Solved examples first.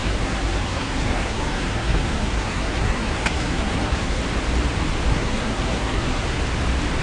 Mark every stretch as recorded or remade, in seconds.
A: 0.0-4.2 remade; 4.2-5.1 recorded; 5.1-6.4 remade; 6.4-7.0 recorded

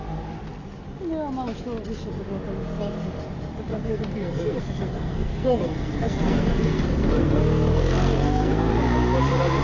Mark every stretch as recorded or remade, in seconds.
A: 0.0-3.7 recorded; 3.7-8.7 remade; 8.7-9.6 recorded

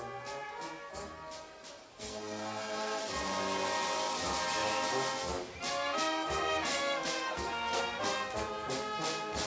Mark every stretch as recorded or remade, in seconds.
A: 0.0-1.8 recorded; 1.8-3.0 remade; 3.0-6.7 recorded; 6.7-7.8 remade; 7.8-9.5 recorded

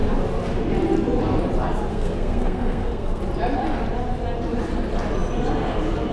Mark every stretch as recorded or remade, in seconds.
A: 0.0-1.9 recorded; 1.9-3.2 remade; 3.2-6.1 recorded

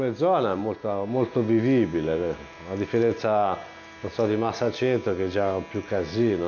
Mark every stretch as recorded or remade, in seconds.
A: 0.0-6.5 recorded